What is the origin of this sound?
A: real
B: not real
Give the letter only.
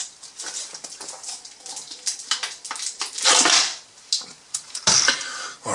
A